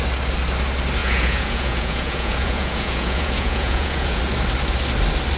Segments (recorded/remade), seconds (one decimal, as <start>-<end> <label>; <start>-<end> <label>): 0.0-1.0 recorded; 1.0-4.2 remade; 4.2-5.4 recorded